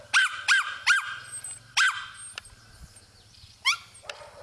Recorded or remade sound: recorded